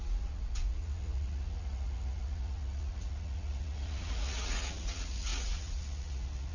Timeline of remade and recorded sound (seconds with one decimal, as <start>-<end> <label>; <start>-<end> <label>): 0.0-6.5 remade